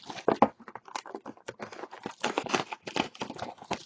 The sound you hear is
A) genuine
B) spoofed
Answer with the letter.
A